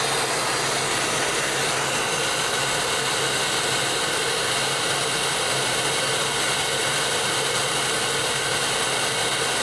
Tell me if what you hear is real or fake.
real